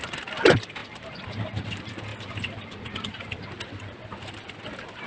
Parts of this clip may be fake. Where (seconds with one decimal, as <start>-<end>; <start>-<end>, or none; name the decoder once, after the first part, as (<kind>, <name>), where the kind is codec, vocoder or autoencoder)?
none